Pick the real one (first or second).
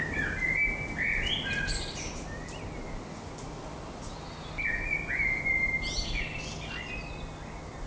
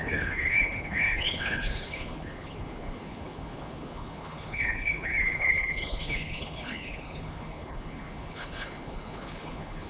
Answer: first